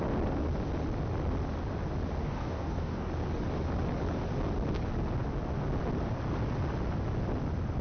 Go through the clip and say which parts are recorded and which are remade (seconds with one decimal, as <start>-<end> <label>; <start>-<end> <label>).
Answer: 0.0-2.2 recorded; 2.2-3.1 remade; 3.1-7.8 recorded